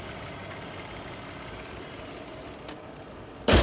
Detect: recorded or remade recorded